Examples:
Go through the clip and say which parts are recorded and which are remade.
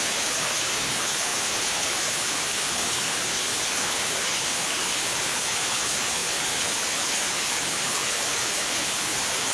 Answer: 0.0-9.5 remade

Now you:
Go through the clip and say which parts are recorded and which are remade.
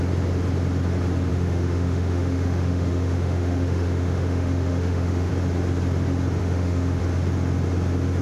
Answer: 0.0-1.3 recorded; 1.3-5.3 remade; 5.3-6.4 recorded; 6.4-7.0 remade; 7.0-8.2 recorded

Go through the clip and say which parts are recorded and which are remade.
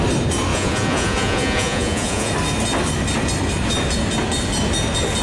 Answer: 0.0-0.5 recorded; 0.5-2.3 remade; 2.3-5.2 recorded